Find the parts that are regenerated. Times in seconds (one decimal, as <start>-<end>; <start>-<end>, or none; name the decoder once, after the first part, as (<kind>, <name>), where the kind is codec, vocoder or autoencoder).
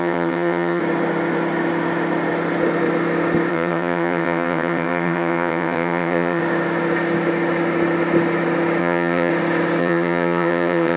0.0-0.8 (vocoder, HiFi-GAN); 3.5-6.4; 8.8-9.3; 9.8-11.0